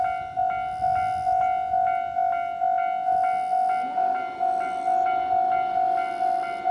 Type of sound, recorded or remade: recorded